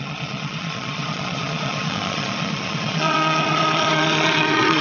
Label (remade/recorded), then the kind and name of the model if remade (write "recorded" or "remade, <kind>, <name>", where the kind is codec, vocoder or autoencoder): remade, vocoder, Vocos